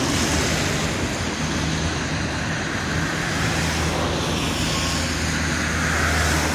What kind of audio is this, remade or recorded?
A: recorded